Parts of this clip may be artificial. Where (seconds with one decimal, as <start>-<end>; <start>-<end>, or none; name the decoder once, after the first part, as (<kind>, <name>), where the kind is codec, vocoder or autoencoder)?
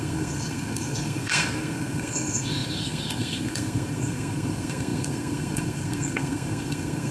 0.0-7.1 (codec, SNAC)